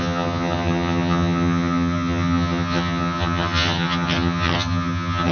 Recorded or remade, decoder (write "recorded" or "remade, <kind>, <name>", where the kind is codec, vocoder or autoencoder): remade, vocoder, HiFi-GAN